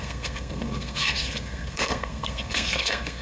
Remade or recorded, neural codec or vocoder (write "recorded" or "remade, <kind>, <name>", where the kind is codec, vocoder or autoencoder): remade, codec, SNAC